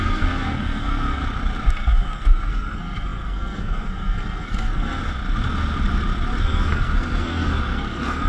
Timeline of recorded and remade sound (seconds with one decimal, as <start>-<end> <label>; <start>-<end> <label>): 0.0-1.2 remade; 1.2-1.7 recorded; 1.7-5.0 remade; 5.0-6.4 recorded; 6.4-8.3 remade